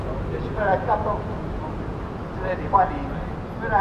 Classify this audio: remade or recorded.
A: recorded